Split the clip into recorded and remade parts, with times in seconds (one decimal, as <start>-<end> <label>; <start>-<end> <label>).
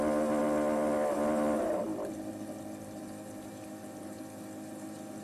0.0-5.2 remade